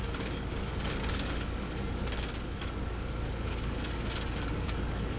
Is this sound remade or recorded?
remade